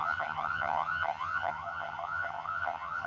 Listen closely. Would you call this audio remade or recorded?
remade